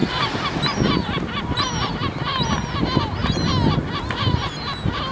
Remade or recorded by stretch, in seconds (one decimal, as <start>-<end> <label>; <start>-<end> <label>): 0.0-1.9 remade; 1.9-5.1 recorded